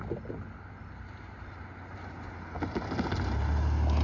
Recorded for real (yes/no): yes